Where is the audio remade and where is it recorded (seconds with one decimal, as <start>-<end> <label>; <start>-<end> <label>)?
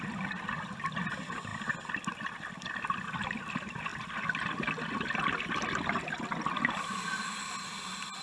0.0-8.2 recorded